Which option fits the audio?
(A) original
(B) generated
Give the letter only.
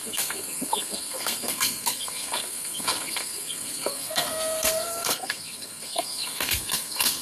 B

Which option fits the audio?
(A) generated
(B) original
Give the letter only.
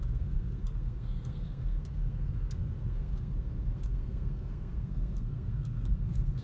A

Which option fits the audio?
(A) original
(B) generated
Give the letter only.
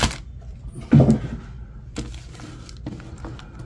A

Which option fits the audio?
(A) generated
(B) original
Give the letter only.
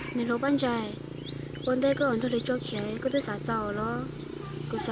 B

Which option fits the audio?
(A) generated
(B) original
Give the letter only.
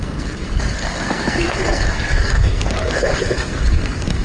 A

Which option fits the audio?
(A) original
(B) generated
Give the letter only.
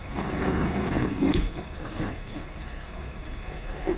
B